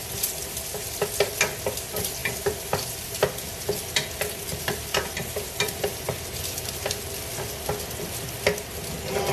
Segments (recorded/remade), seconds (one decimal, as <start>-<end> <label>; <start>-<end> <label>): 0.0-2.2 recorded; 2.2-3.1 remade; 3.1-4.8 recorded; 4.8-6.0 remade; 6.0-9.3 recorded